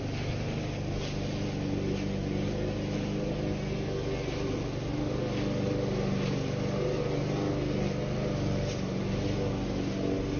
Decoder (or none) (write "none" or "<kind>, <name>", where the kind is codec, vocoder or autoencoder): none